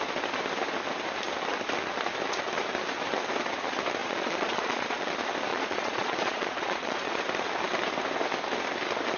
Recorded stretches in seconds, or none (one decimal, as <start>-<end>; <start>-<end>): 0.0-4.0; 5.1-5.5; 7.2-9.2

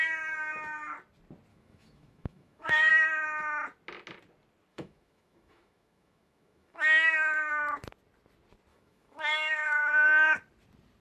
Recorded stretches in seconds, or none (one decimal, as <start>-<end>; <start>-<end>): 0.0-1.5; 2.9-4.7; 7.5-8.7; 9.9-11.0

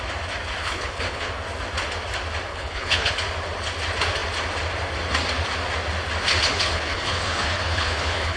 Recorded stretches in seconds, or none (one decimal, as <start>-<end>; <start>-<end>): 0.0-0.6; 1.3-2.5; 3.1-6.5

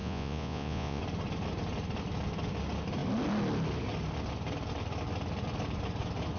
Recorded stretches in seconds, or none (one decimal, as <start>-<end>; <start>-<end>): 1.0-6.4

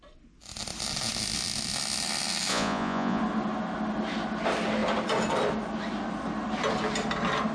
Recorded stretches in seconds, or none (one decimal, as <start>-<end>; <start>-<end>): 0.0-2.5; 3.2-7.5

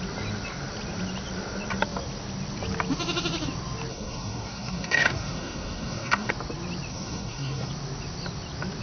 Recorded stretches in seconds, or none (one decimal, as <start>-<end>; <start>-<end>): 0.0-3.9; 6.3-6.9; 7.7-8.8

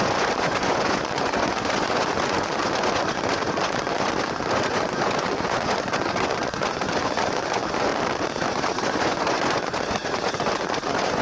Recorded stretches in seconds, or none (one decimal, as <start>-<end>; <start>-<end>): 7.9-8.4